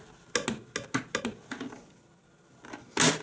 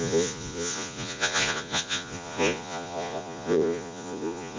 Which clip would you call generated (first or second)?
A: second